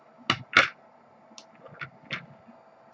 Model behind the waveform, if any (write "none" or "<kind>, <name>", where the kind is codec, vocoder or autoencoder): none